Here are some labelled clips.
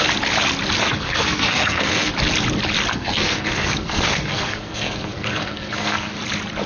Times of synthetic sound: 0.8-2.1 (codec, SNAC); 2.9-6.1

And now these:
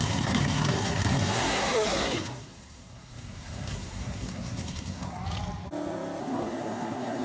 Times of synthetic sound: 0.0-5.2 (codec, SNAC); 6.2-7.2

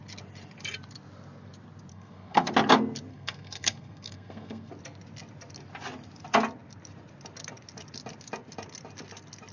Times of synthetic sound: 1.9-2.5 (codec, SNAC); 3.1-4.7

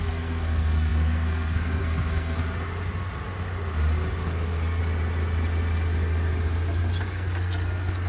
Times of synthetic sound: 0.0-2.4 (codec, SNAC); 4.2-4.8; 7.0-8.1

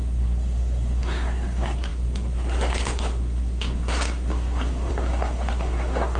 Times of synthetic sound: 0.0-6.2 (codec, SNAC)